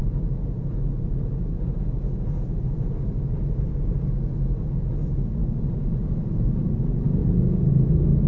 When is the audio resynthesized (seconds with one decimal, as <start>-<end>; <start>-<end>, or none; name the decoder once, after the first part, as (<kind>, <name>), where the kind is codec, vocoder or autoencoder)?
5.4-6.7 (vocoder, BigVGAN v2)